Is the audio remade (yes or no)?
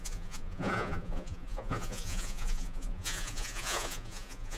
yes